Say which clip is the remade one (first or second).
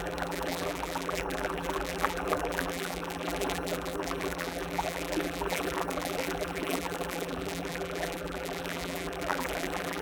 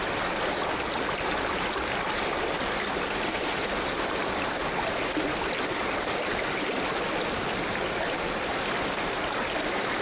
first